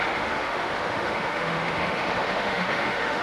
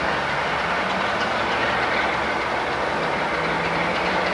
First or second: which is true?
second